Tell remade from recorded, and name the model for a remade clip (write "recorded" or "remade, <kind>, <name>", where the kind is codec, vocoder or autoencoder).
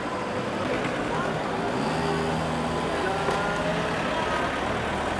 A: recorded